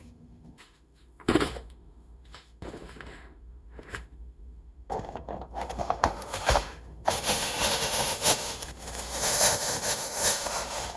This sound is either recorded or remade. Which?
remade